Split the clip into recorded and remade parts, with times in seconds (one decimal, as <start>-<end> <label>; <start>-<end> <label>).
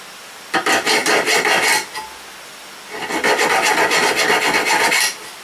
0.0-5.4 recorded